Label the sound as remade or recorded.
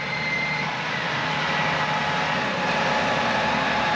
remade